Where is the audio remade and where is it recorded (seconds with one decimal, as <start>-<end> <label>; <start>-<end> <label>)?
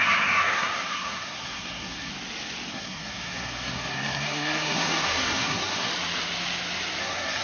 0.0-2.1 remade; 2.1-2.7 recorded; 2.7-5.9 remade; 5.9-7.0 recorded; 7.0-7.4 remade